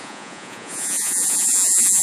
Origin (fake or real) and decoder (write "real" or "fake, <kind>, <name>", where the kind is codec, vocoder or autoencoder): fake, vocoder, Vocos